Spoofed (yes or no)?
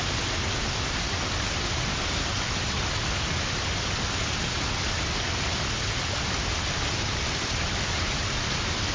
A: no